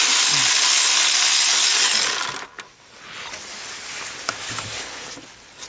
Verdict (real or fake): real